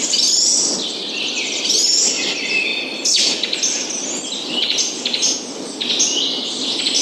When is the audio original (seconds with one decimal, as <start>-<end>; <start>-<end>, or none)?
0.0-7.0